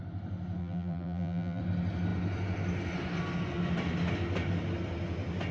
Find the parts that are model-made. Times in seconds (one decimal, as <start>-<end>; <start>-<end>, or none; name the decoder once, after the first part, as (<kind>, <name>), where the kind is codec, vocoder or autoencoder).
0.6-1.6 (vocoder, BigVGAN v2)

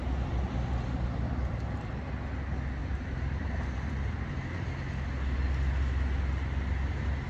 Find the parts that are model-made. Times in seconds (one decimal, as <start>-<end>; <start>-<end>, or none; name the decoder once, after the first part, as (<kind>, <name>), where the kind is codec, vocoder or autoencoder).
2.8-4.7 (vocoder, BigVGAN v2)

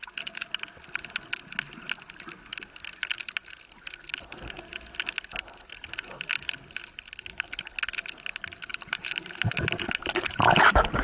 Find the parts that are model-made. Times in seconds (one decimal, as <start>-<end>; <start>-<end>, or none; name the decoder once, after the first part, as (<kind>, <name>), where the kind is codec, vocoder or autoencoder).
8.7-10.4 (vocoder, BigVGAN v2)

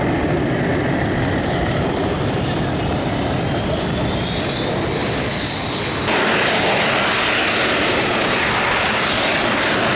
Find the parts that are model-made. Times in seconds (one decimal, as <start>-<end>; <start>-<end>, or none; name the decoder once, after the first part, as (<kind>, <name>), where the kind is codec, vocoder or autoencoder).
0.7-4.1 (vocoder, BigVGAN v2)

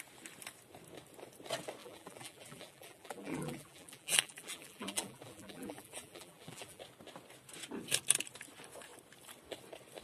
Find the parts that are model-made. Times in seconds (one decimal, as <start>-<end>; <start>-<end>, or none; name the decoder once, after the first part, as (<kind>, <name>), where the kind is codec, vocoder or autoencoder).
1.8-6.8 (vocoder, BigVGAN v2)

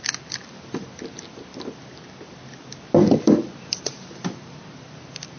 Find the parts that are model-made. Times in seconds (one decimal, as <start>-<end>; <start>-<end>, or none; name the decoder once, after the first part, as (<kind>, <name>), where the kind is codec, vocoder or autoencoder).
none